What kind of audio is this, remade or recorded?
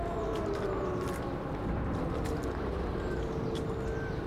recorded